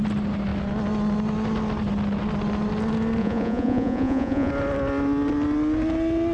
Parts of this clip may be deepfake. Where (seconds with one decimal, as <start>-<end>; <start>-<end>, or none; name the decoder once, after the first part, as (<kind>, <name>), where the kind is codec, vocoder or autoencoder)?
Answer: 3.2-4.5 (vocoder, Vocos)